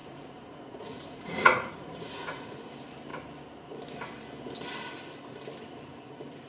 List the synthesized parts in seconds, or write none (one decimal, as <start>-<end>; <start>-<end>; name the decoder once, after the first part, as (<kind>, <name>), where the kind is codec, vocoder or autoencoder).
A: 0.0-2.6 (vocoder, Vocos)